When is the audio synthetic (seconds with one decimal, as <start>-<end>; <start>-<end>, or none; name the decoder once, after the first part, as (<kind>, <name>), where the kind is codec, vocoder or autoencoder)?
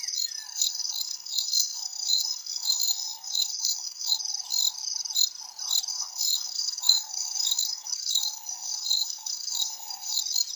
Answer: 0.5-4.2 (codec, SNAC); 5.9-10.2